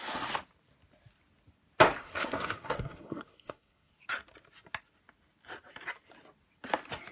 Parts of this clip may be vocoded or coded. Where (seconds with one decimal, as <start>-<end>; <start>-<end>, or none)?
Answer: 2.0-3.9

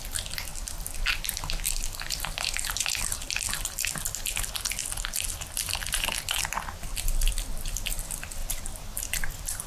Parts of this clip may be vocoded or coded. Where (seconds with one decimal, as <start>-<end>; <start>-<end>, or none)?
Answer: none